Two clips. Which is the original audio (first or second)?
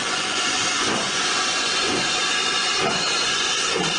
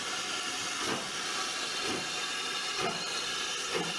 second